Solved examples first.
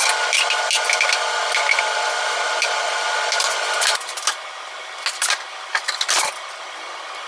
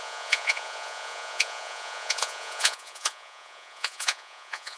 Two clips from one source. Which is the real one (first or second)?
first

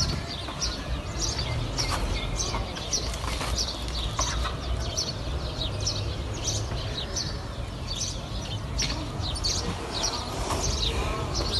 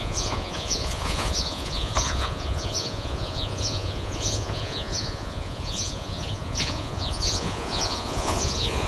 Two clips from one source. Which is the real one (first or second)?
first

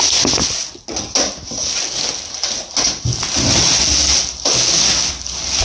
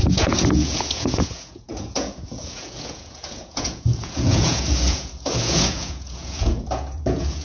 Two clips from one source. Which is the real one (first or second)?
first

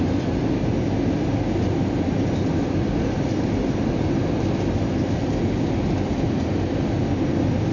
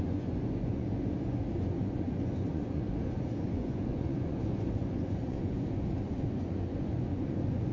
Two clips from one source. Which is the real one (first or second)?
first